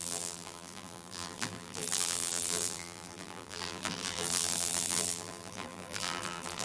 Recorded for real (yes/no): no